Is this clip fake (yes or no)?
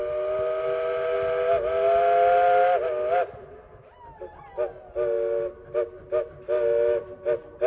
no